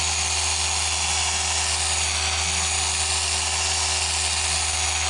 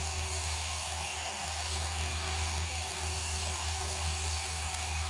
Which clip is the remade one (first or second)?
second